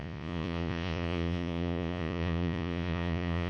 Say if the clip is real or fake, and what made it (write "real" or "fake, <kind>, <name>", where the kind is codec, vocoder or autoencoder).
fake, vocoder, Vocos